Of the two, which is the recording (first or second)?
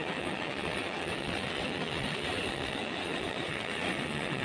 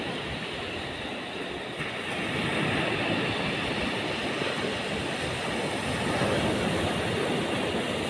second